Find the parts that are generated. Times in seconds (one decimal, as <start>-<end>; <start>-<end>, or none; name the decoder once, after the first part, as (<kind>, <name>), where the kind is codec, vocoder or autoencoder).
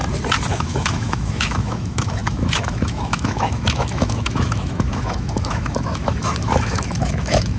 0.5-7.6 (autoencoder, DAC-VAE)